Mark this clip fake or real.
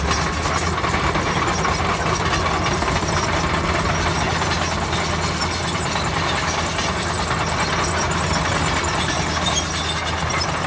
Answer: real